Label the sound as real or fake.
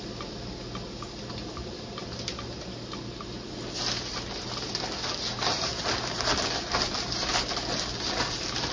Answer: real